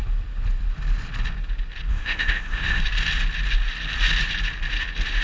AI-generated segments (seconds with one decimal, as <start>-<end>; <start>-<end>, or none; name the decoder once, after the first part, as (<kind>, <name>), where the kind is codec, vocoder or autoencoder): 1.9-2.8 (codec, ZipCodec)